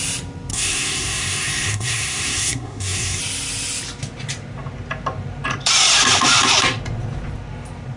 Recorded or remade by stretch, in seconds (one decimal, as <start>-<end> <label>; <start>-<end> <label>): 0.0-0.5 recorded; 0.5-3.2 remade; 3.2-8.0 recorded